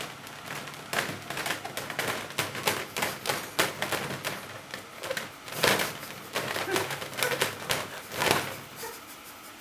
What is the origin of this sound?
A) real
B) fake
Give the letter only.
A